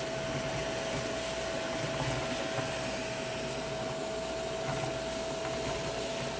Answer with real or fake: real